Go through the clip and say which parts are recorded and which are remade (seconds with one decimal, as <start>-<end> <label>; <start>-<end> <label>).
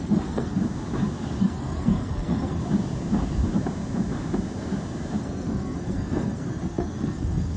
0.0-0.6 remade; 0.6-1.4 recorded; 1.4-2.6 remade; 2.6-5.2 recorded; 5.2-7.6 remade